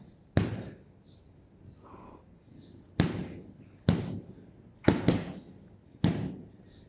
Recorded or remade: recorded